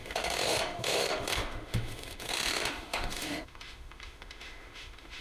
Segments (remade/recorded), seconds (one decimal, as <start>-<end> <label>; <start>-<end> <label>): 0.0-5.2 remade